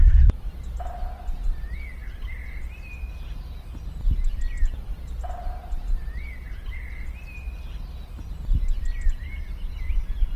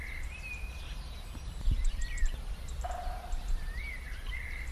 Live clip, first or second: first